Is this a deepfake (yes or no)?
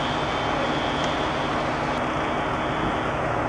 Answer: no